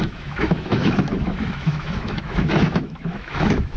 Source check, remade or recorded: remade